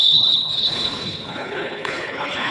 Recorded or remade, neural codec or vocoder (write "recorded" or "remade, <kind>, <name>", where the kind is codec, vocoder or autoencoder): remade, codec, HILCodec